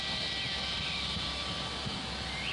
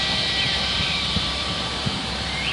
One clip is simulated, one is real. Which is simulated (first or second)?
second